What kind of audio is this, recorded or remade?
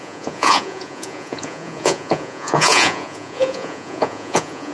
remade